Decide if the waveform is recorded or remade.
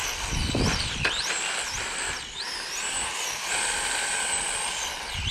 recorded